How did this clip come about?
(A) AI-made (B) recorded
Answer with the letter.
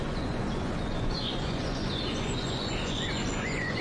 A